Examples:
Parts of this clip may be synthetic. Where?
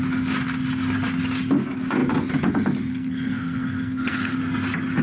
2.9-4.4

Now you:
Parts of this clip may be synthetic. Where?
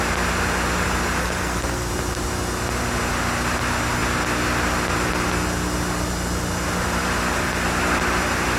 1.2-1.9